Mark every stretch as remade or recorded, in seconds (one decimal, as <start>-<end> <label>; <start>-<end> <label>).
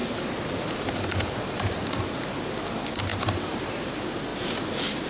0.0-2.2 remade; 2.2-3.1 recorded; 3.1-3.9 remade; 3.9-4.3 recorded; 4.3-5.1 remade